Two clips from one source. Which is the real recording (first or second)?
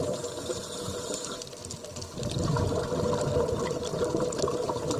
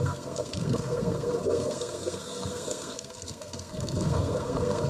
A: first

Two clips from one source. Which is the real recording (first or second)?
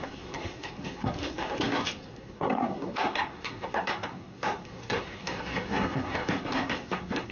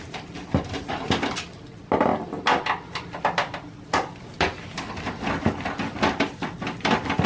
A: second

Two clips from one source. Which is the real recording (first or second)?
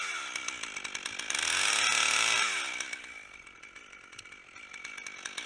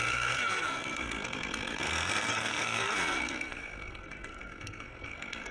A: first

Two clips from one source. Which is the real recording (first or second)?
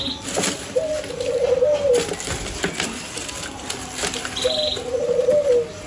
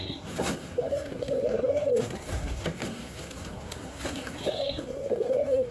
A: first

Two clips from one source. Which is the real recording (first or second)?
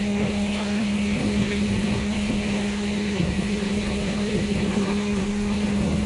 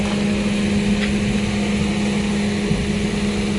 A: second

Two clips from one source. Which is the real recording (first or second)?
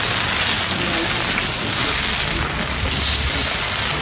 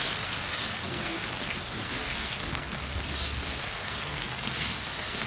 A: first